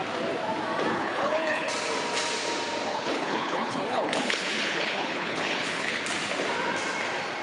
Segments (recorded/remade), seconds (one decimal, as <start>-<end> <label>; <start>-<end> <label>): 0.0-0.9 recorded; 0.9-1.7 remade; 1.7-2.9 recorded; 2.9-6.0 remade; 6.0-7.4 recorded